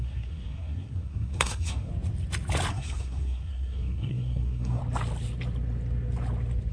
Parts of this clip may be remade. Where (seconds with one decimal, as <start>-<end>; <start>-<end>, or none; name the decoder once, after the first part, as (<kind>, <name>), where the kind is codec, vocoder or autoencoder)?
0.0-1.9 (codec, SNAC); 2.7-4.8